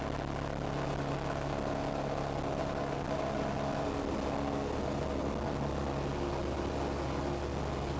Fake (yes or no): no